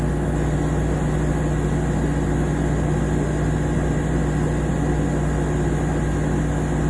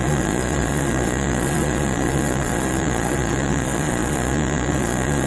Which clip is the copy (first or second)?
second